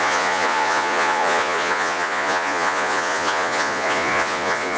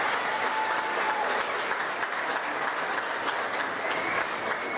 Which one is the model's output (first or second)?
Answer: first